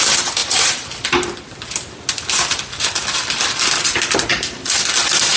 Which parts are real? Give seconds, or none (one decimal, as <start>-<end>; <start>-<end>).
0.0-5.4